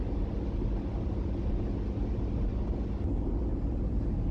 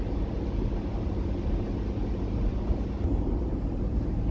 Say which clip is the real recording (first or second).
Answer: first